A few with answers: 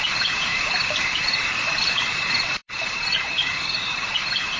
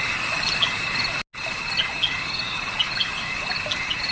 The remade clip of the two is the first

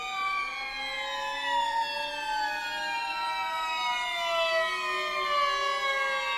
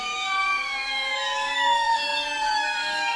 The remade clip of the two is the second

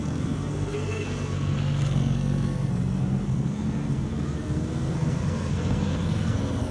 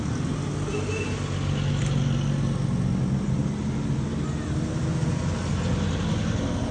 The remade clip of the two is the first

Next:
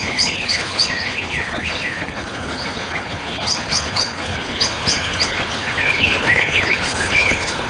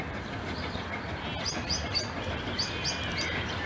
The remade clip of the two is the first